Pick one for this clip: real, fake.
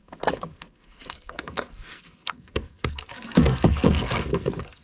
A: fake